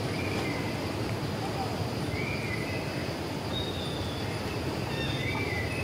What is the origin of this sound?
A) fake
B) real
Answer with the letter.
B